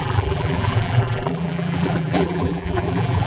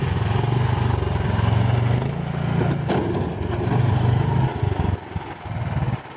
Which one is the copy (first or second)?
first